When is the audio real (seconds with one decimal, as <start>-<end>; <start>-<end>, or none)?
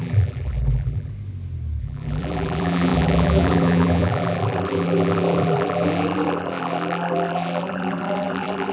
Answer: 1.1-1.8